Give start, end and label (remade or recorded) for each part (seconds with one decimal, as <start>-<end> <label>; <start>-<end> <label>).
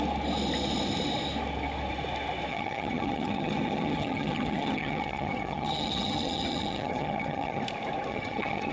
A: 0.0-2.5 recorded; 2.5-7.6 remade; 7.6-8.1 recorded; 8.1-8.7 remade